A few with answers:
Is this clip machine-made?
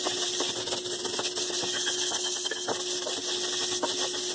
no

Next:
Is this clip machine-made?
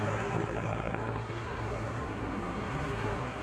yes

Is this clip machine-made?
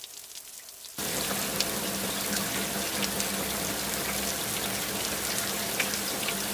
no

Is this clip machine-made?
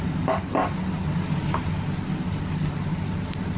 no